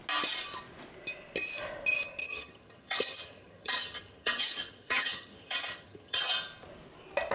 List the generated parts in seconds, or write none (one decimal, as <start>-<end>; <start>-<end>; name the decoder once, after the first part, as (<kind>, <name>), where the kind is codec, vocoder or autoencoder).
2.2-6.2 (vocoder, HiFi-GAN)